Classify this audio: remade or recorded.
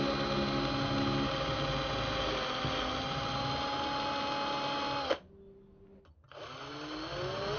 recorded